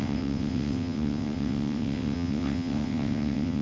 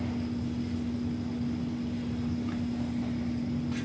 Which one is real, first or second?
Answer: second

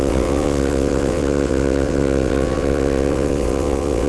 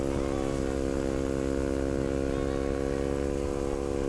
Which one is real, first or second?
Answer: second